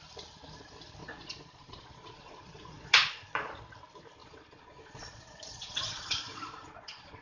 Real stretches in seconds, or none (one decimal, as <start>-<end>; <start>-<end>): 0.0-1.0; 3.5-4.2